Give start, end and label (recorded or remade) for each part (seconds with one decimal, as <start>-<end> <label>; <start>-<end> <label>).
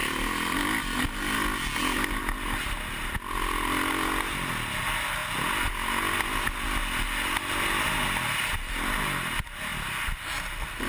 0.0-9.7 recorded; 9.7-10.5 remade; 10.5-10.9 recorded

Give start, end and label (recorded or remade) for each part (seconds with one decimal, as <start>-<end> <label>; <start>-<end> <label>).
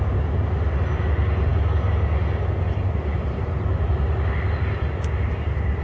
0.0-3.1 recorded; 3.1-4.3 remade; 4.3-5.8 recorded